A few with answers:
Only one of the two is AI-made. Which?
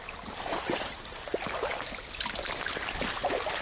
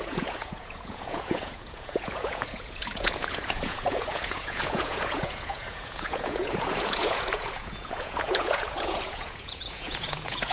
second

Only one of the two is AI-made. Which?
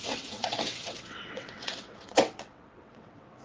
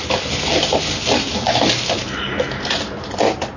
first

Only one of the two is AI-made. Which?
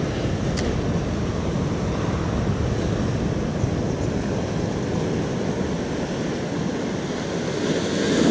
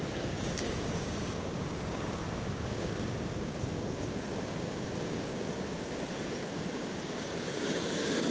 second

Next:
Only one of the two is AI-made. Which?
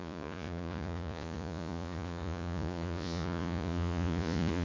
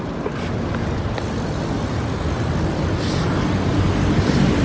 first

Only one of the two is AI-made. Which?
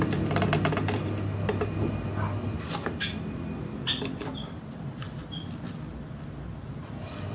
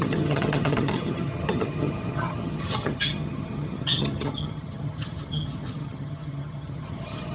second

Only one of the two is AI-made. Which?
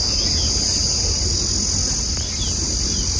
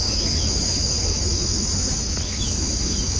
second